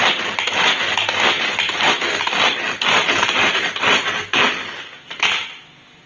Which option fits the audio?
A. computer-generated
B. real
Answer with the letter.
B